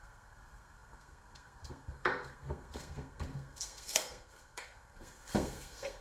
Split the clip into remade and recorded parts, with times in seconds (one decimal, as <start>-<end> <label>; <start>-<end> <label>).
0.0-6.0 remade